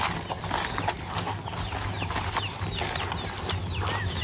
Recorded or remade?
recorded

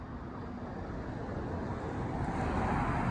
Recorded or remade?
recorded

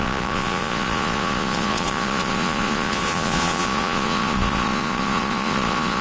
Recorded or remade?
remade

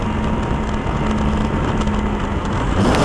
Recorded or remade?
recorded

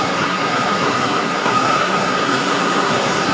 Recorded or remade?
remade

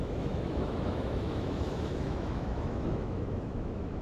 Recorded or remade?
remade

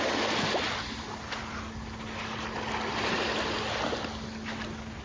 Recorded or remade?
recorded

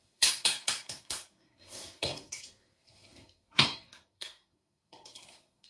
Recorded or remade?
remade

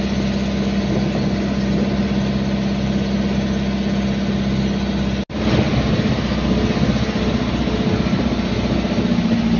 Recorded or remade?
recorded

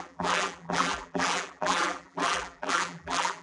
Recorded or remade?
remade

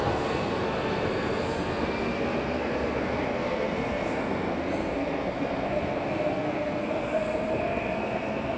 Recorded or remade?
remade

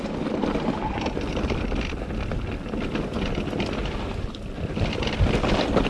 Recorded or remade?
recorded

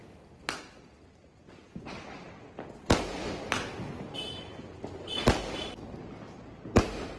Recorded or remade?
recorded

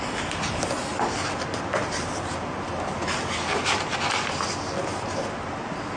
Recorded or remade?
recorded